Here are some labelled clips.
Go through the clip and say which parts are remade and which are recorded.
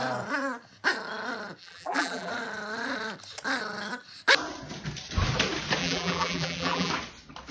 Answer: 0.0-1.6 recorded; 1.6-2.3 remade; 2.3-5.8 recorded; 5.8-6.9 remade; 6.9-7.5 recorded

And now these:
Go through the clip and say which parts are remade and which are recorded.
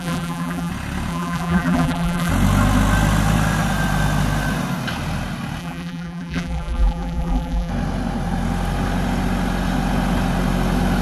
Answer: 0.0-0.7 remade; 0.7-1.1 recorded; 1.1-2.3 remade; 2.3-5.6 recorded; 5.6-7.7 remade; 7.7-11.0 recorded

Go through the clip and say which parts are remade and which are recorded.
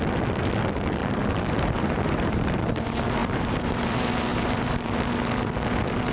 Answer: 0.0-1.0 recorded; 1.0-2.6 remade; 2.6-3.2 recorded; 3.2-3.8 remade; 3.8-4.3 recorded; 4.3-5.1 remade; 5.1-6.1 recorded